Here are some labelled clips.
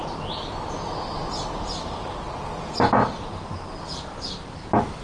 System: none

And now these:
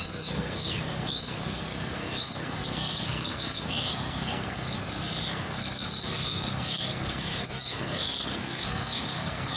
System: codec, SNAC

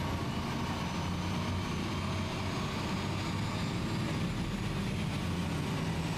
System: none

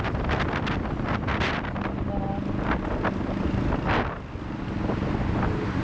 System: none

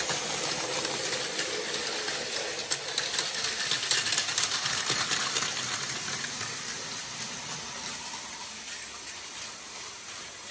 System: none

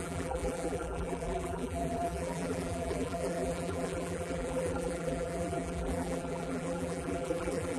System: vocoder, BigVGAN v2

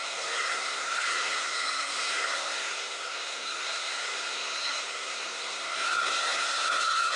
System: codec, SNAC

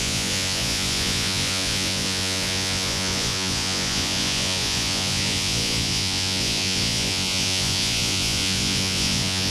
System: vocoder, Vocos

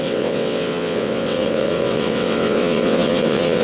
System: vocoder, WaveNeXt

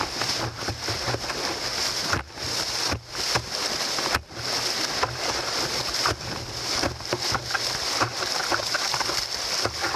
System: none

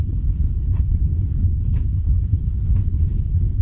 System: codec, HILCodec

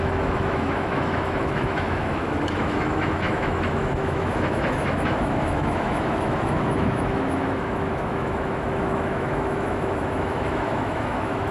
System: autoencoder, DAC-VAE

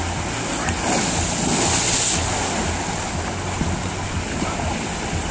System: none